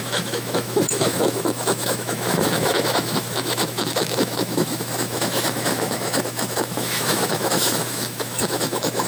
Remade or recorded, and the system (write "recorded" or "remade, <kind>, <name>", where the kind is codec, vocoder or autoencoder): remade, autoencoder, DAC-VAE